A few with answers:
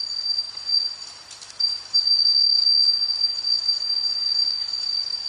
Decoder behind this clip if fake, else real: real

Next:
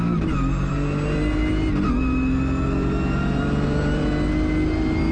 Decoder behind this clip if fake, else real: real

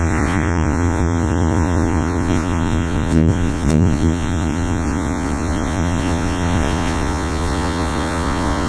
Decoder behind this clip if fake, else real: fake, vocoder, Vocos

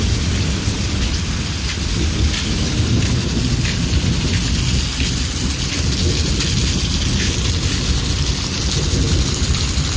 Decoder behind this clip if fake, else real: real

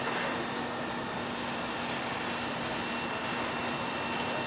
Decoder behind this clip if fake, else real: real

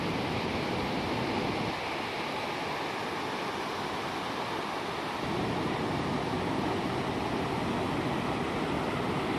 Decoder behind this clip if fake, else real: real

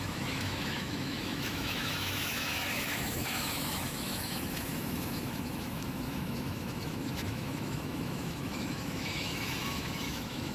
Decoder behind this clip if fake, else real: fake, autoencoder, DAC-VAE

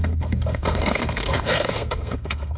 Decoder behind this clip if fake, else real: fake, codec, SNAC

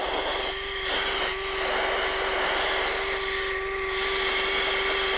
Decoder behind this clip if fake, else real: real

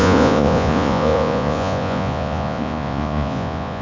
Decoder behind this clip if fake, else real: fake, vocoder, Vocos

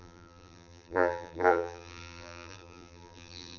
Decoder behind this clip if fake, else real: fake, vocoder, BigVGAN v2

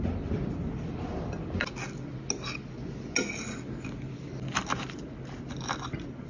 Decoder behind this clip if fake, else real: real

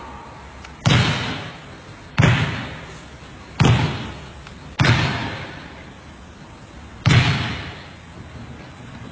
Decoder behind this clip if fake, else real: real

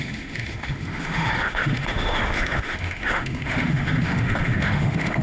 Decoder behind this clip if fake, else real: fake, autoencoder, DAC-VAE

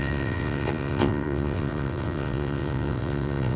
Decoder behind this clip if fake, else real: fake, vocoder, WaveNeXt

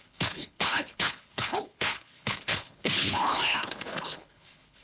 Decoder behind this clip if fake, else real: fake, codec, HILCodec